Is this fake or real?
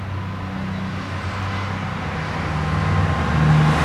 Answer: real